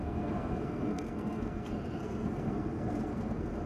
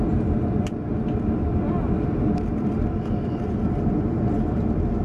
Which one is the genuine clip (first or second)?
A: second